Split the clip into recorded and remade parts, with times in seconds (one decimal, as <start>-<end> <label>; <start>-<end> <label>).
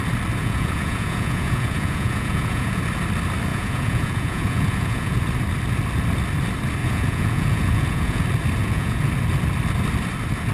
0.0-0.4 recorded; 0.4-2.8 remade; 2.8-3.5 recorded; 3.5-5.2 remade; 5.2-6.8 recorded; 6.8-8.2 remade; 8.2-8.6 recorded; 8.6-9.1 remade; 9.1-10.5 recorded